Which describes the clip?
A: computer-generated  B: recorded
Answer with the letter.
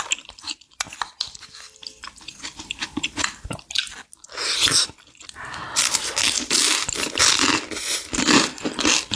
B